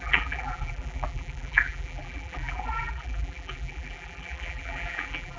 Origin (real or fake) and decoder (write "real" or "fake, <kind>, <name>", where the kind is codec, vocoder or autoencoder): fake, vocoder, BigVGAN v2